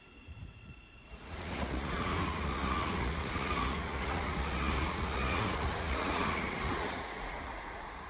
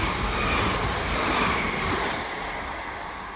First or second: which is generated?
first